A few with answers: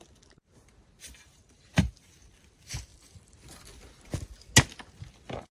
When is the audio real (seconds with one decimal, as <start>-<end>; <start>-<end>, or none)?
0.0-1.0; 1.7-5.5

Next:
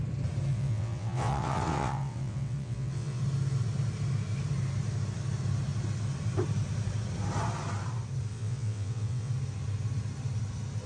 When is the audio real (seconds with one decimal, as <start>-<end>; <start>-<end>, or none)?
0.0-0.5; 3.2-8.3; 9.3-10.9

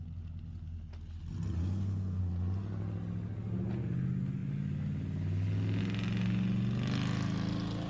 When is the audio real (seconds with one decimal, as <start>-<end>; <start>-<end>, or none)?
0.0-1.6; 2.2-7.9

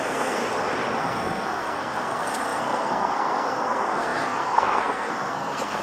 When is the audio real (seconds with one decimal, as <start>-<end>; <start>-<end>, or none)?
0.4-1.0

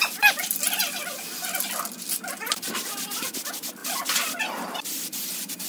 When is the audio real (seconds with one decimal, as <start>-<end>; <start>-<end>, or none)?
0.0-5.7

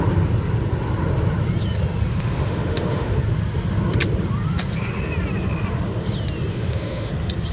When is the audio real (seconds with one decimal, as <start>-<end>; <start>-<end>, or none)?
0.0-2.1; 3.2-6.5; 7.1-7.5